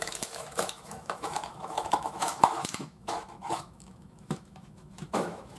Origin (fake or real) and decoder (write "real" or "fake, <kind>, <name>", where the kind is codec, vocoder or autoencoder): fake, autoencoder, DAC-VAE